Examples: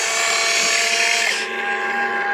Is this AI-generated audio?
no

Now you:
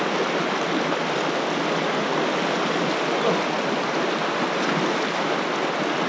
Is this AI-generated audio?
no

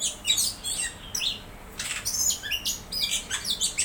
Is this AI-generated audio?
no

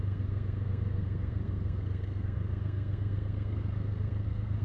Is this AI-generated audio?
yes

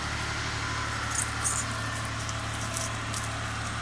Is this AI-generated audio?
no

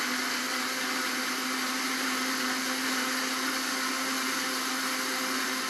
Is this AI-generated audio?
no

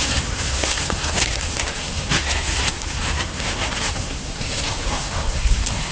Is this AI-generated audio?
yes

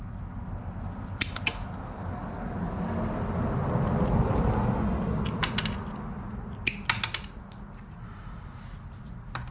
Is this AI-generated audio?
no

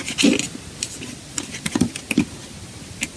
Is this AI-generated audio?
no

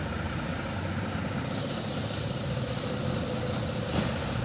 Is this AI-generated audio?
no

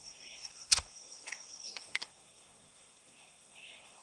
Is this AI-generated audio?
yes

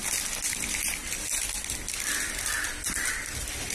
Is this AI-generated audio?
no